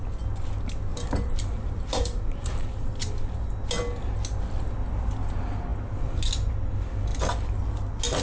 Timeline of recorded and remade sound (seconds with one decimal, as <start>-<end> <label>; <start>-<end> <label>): 0.0-0.9 recorded; 0.9-3.1 remade; 3.1-8.2 recorded